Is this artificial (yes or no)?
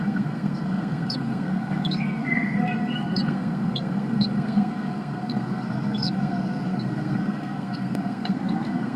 yes